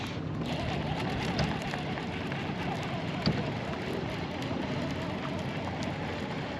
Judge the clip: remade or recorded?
recorded